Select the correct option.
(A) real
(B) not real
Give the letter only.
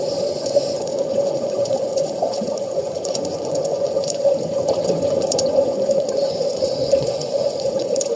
B